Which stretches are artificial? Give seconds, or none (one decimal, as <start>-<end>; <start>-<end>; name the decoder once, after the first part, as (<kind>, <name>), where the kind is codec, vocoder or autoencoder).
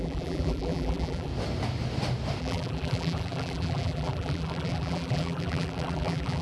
0.0-1.3 (vocoder, BigVGAN v2); 2.4-6.4